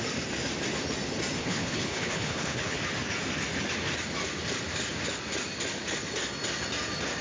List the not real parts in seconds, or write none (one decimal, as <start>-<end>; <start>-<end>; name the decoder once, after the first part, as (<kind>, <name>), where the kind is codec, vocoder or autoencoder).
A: 1.4-2.8 (codec, HILCodec)